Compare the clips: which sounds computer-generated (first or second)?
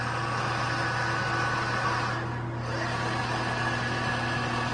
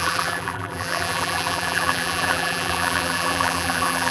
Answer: second